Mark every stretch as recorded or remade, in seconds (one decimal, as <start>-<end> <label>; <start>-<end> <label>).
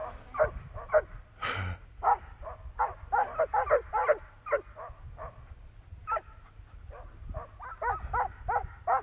0.0-3.4 remade; 3.4-9.0 recorded